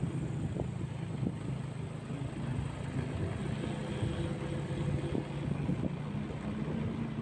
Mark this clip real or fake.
real